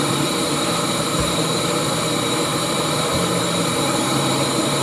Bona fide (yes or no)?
no